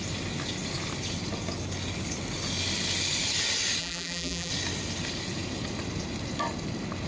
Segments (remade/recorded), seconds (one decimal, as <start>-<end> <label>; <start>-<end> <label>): 0.0-3.8 recorded; 3.8-4.5 remade; 4.5-7.1 recorded